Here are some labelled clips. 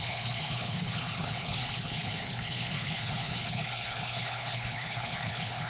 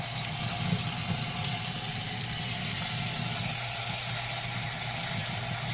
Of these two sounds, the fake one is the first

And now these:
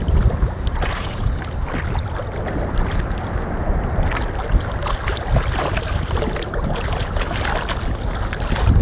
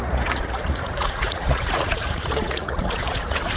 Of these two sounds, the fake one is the second